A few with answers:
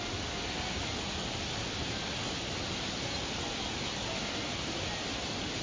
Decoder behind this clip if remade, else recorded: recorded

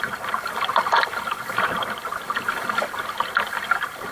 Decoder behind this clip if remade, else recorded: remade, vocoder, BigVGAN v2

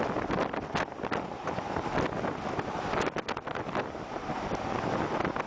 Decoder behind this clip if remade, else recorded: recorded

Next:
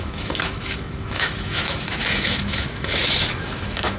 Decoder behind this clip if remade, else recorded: remade, autoencoder, DAC-VAE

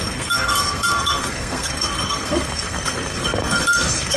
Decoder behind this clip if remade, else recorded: remade, codec, SNAC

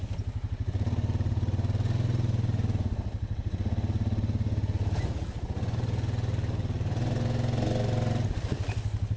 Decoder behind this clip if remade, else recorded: recorded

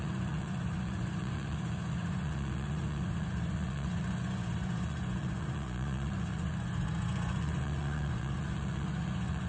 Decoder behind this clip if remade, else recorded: remade, vocoder, Vocos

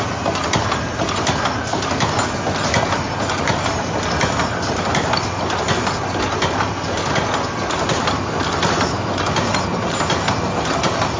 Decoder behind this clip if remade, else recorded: recorded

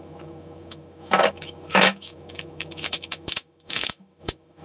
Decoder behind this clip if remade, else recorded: remade, autoencoder, DAC-VAE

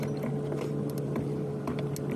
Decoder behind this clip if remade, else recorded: recorded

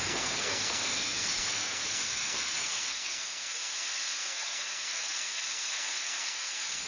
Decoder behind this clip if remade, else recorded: remade, codec, SNAC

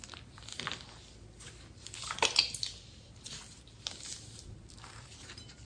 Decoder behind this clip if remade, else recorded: recorded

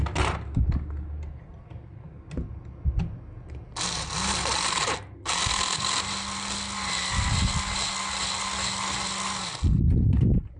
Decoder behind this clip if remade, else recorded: recorded